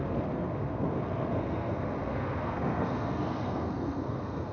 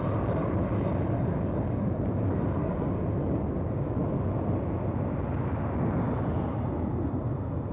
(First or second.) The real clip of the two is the second